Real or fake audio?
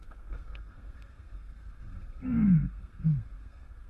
fake